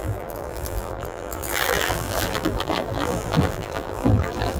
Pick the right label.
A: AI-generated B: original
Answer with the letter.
A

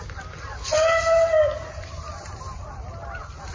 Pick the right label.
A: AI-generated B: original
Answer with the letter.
B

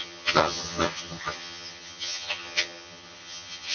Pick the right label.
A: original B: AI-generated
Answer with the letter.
B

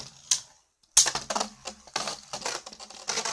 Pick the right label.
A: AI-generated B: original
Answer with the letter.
B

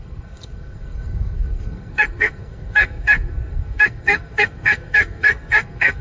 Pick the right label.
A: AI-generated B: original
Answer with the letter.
A